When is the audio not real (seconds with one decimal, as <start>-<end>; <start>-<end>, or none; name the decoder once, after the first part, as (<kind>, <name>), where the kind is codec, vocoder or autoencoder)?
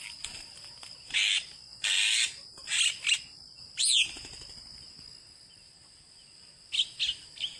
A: none